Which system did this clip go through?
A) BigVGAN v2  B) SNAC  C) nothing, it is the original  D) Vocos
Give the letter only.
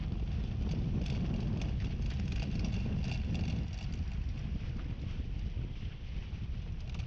C